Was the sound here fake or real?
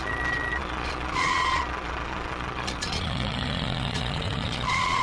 fake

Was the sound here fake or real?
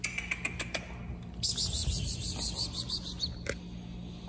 real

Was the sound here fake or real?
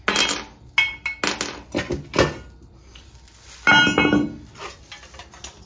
real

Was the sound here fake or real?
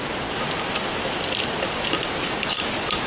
real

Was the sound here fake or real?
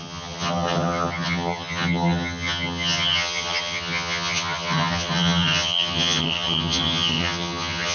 fake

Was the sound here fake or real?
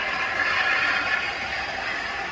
real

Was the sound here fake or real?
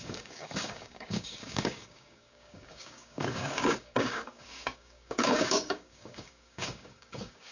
fake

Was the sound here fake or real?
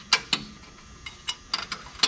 real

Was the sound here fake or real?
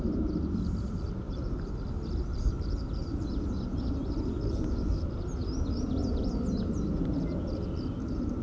real